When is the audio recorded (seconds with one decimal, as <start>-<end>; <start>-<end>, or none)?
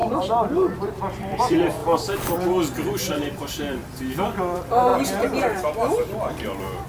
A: 1.8-3.1; 3.8-4.4; 4.9-6.3